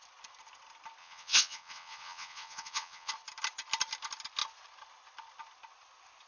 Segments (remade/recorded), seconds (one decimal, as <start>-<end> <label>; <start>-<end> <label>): 0.0-1.0 recorded; 1.0-3.1 remade; 3.1-6.3 recorded